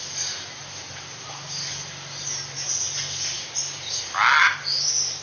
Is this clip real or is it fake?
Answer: real